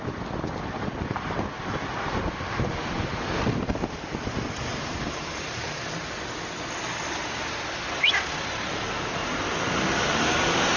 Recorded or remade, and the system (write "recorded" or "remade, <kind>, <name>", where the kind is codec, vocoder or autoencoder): recorded